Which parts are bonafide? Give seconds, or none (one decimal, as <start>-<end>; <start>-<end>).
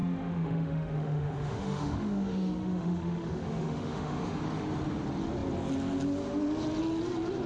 4.4-7.5